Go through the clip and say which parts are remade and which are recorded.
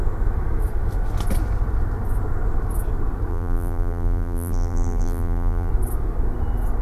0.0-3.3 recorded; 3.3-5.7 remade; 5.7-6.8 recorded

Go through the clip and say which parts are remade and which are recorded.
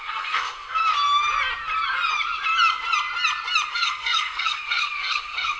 0.0-0.8 remade; 0.8-3.7 recorded; 3.7-5.6 remade